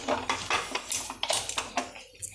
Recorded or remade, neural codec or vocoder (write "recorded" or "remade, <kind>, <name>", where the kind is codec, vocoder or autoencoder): recorded